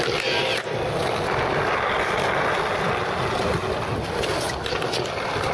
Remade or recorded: recorded